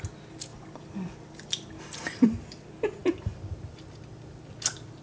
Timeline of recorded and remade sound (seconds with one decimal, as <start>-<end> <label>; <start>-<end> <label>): 0.0-0.5 recorded; 0.5-2.6 remade; 2.6-5.0 recorded

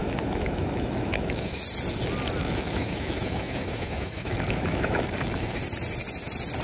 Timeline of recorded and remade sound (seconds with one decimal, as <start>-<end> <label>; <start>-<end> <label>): 0.0-1.6 remade; 1.6-2.4 recorded; 2.4-5.6 remade; 5.6-6.6 recorded